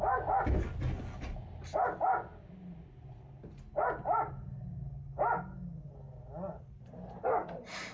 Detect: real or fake real